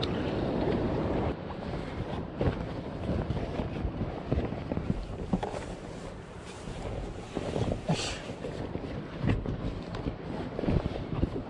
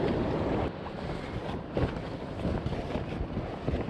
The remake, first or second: first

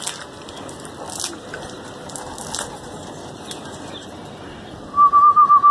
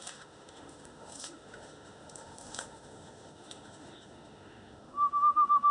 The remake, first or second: second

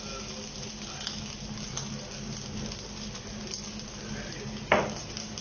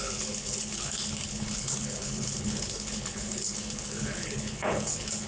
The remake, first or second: second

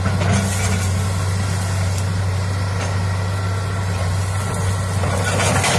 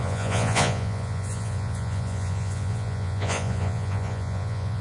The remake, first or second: second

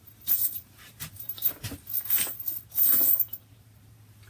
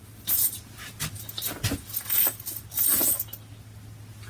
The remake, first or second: first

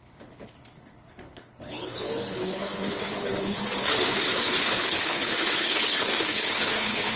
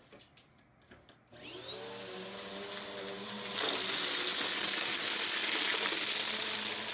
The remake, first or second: first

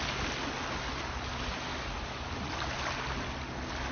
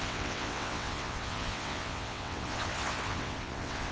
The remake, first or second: second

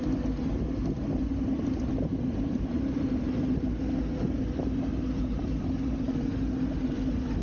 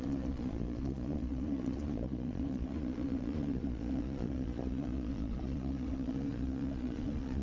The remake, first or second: second